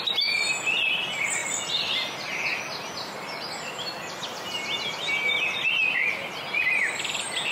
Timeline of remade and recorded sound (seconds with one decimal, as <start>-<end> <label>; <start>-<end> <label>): 0.0-7.5 recorded